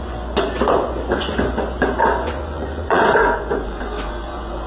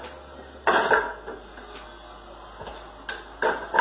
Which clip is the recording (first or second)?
second